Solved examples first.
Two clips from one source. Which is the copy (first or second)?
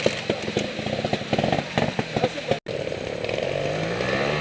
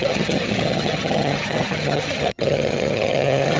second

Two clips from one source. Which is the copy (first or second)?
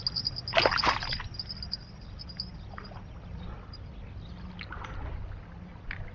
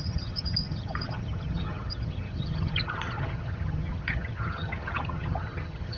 second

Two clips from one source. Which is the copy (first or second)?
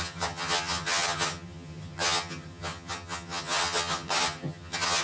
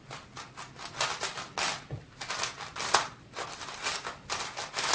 first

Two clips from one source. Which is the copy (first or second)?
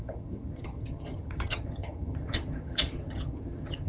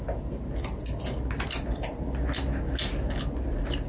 first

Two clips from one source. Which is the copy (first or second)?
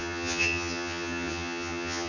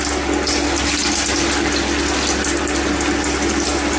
first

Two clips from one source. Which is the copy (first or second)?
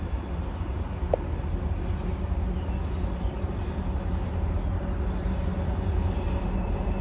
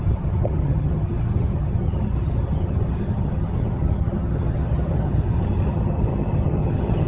second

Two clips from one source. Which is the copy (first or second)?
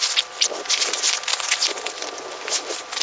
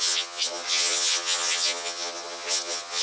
second